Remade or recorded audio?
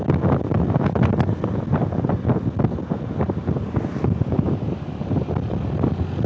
recorded